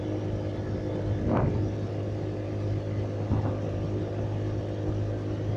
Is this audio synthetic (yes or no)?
no